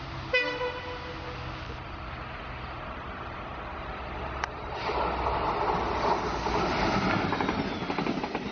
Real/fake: real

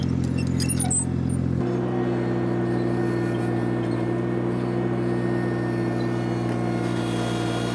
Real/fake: real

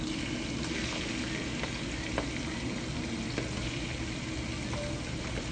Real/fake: real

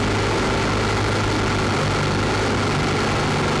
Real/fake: real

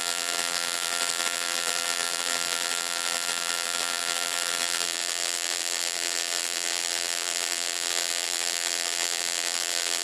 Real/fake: fake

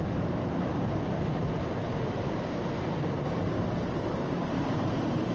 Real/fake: fake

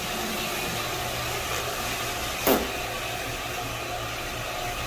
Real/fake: real